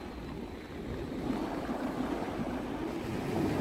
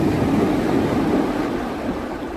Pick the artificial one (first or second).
second